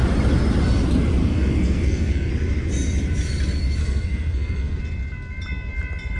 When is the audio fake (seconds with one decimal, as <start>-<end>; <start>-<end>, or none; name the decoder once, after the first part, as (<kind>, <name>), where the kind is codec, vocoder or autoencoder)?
1.2-2.3 (codec, SNAC); 3.8-4.8